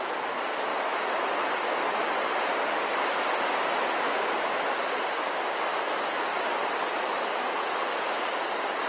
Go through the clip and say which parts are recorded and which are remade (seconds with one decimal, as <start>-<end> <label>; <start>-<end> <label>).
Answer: 0.0-0.7 remade; 0.7-6.0 recorded; 6.0-8.9 remade

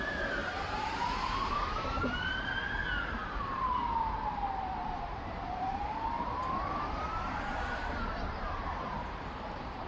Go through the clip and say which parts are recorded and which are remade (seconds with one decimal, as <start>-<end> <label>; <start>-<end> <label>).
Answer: 0.0-0.4 recorded; 0.4-2.5 remade; 2.5-3.2 recorded; 3.2-3.8 remade; 3.8-4.8 recorded; 4.8-9.9 remade

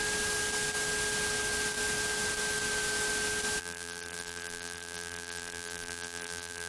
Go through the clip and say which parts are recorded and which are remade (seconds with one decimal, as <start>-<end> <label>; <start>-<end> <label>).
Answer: 0.0-3.6 recorded; 3.6-6.7 remade

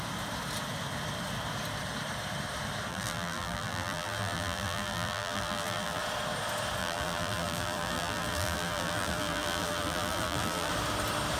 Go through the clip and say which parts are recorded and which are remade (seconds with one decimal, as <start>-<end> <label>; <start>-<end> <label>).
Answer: 0.0-2.9 recorded; 2.9-6.0 remade; 6.0-6.8 recorded; 6.8-10.7 remade; 10.7-11.4 recorded

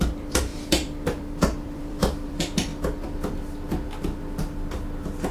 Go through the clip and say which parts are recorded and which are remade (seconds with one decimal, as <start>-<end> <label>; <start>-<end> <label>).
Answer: 0.0-2.7 remade; 2.7-5.3 recorded

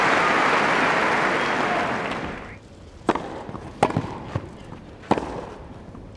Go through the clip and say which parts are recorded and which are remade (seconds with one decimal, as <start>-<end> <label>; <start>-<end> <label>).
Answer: 0.0-6.2 recorded

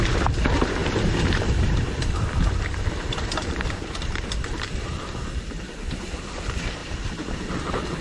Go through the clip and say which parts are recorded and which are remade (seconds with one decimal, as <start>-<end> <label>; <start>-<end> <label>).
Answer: 0.0-0.8 recorded; 0.8-5.6 remade; 5.6-6.8 recorded; 6.8-7.5 remade; 7.5-8.0 recorded